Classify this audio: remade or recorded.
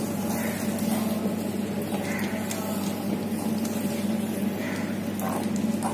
recorded